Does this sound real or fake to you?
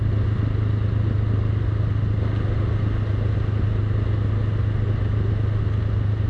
real